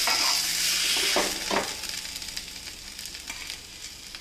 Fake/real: real